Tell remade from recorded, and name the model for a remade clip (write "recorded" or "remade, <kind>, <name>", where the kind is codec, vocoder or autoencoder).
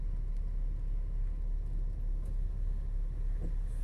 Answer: recorded